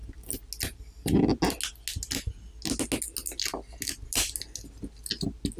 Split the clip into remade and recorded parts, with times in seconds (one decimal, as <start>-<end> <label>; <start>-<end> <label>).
0.0-5.6 recorded